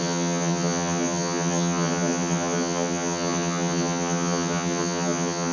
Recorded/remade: remade